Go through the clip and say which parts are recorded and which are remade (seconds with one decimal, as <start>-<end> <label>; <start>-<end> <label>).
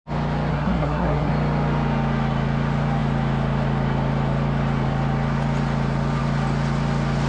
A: 0.0-0.5 recorded; 0.5-1.3 remade; 1.3-7.3 recorded